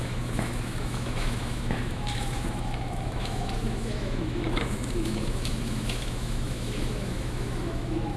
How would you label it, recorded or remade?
remade